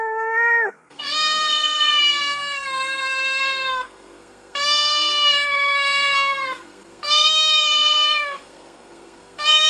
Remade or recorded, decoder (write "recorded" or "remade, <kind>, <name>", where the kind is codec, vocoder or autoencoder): remade, codec, SNAC